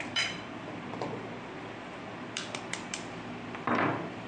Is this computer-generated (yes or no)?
yes